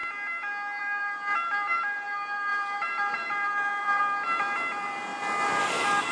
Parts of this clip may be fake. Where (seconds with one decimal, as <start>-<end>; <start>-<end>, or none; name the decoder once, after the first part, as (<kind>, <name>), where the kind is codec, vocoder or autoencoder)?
0.8-5.1 (vocoder, BigVGAN v2); 5.6-6.1